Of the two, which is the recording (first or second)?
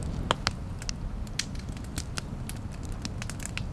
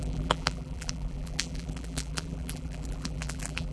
first